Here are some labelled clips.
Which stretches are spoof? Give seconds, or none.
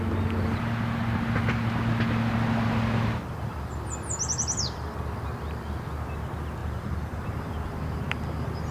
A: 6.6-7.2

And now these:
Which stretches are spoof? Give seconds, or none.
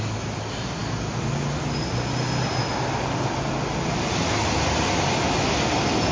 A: none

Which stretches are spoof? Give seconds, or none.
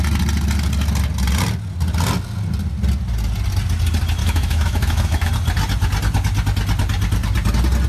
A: 4.2-5.3